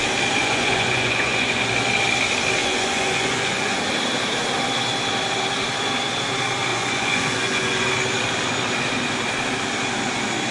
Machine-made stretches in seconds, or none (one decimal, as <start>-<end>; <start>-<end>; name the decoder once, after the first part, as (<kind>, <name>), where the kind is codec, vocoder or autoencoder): 0.4-1.7 (vocoder, Vocos); 2.6-3.8; 6.7-7.9